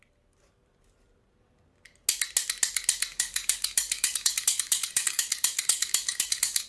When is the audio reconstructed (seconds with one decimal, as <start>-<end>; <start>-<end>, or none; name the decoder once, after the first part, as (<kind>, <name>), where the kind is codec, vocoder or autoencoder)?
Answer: 3.1-6.7 (codec, DAC)